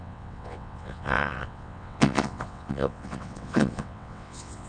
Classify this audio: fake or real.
fake